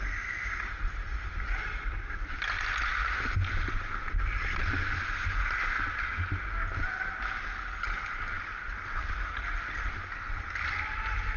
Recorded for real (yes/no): yes